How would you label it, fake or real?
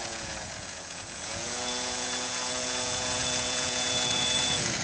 fake